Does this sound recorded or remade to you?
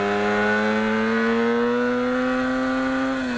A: recorded